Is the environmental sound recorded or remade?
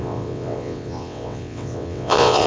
remade